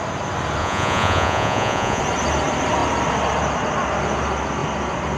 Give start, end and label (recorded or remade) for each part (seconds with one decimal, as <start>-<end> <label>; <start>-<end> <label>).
0.0-0.6 recorded; 0.6-2.0 remade; 2.0-5.2 recorded